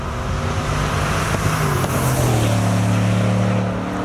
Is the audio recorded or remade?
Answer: recorded